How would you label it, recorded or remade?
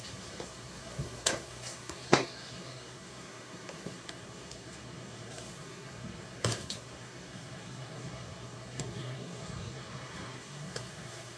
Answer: remade